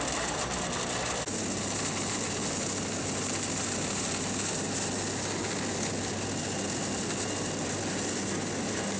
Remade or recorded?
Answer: recorded